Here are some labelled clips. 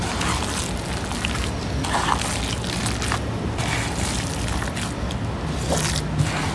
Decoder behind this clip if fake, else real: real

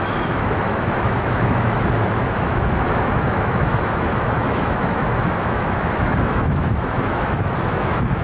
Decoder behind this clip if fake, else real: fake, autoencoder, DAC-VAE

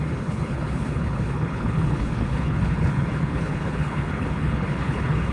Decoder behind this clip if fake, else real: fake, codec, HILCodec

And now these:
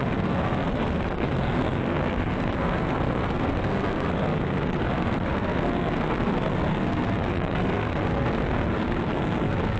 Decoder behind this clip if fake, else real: fake, codec, SNAC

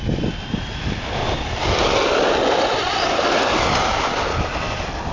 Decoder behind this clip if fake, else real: real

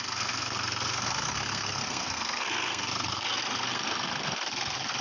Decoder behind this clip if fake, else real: fake, codec, SNAC